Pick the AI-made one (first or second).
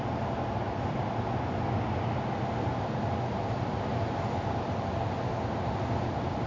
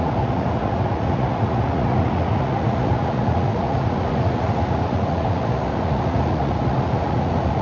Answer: second